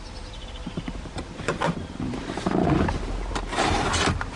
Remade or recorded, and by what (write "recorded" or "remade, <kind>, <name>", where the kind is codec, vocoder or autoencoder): remade, vocoder, BigVGAN v2